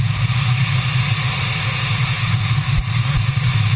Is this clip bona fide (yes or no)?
yes